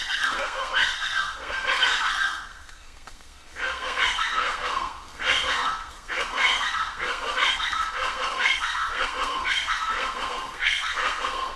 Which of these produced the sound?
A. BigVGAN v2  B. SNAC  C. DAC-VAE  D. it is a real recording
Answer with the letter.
B